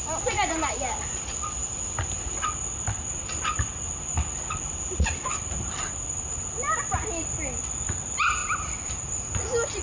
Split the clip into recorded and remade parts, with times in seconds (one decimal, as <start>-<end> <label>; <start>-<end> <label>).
0.0-3.1 recorded; 3.1-6.4 remade; 6.4-8.4 recorded; 8.4-9.1 remade; 9.1-9.8 recorded